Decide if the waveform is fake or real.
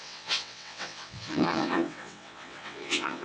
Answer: fake